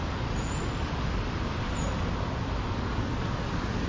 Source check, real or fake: real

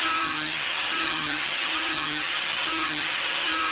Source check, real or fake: fake